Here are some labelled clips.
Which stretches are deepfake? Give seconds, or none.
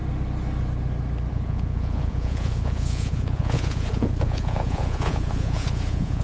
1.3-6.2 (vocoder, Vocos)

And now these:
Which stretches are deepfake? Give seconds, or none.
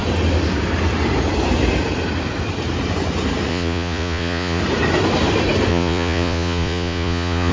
3.5-4.6 (vocoder, Vocos); 5.7-7.5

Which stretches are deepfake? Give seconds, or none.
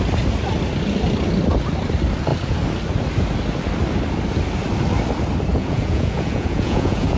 5.5-7.2 (vocoder, Vocos)